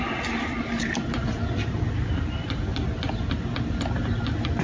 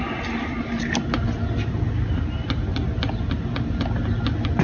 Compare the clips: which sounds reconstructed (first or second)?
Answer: first